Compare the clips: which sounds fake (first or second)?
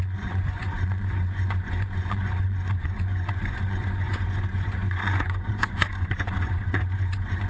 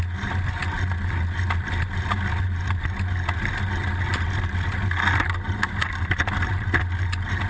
first